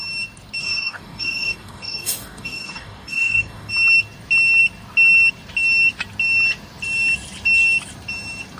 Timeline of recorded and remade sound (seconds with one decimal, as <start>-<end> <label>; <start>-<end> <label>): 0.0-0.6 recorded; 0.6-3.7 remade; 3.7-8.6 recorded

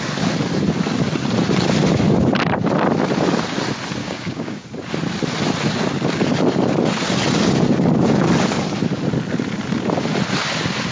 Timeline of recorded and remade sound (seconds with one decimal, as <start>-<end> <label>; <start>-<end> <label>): 0.0-4.0 recorded; 4.0-4.6 remade; 4.6-10.9 recorded

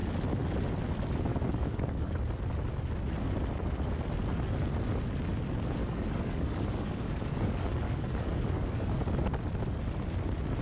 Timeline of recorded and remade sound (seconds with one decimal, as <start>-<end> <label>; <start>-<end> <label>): 0.0-1.3 recorded; 1.3-2.2 remade; 2.2-5.8 recorded; 5.8-9.0 remade; 9.0-10.6 recorded

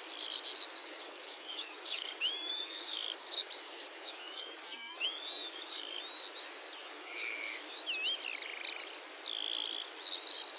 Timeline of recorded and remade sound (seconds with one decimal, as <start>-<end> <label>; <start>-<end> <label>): 0.0-0.8 recorded; 0.8-6.0 remade; 6.0-6.8 recorded; 6.8-7.7 remade; 7.7-10.6 recorded